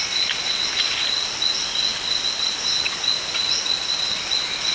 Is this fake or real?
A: real